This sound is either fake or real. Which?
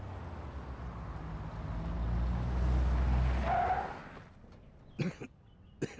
real